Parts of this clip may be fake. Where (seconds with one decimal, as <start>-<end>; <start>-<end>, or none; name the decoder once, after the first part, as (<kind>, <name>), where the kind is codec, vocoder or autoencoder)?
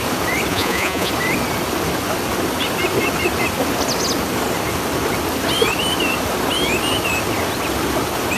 0.5-1.1 (vocoder, Vocos)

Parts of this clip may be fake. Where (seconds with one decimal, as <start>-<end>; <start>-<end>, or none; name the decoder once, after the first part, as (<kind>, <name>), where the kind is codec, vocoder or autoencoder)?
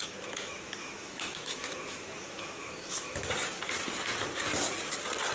0.0-3.2 (autoencoder, DAC-VAE)